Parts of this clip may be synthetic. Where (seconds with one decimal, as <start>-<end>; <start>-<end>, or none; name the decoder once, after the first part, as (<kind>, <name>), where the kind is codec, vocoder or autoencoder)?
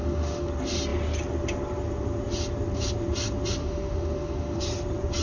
0.0-0.5 (autoencoder, DAC-VAE); 3.6-4.6